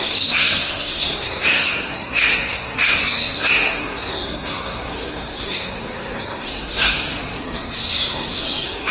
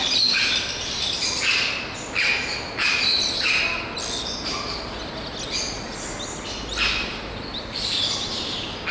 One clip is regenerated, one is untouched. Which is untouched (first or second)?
second